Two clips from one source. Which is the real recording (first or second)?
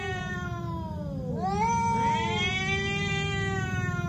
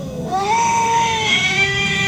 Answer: first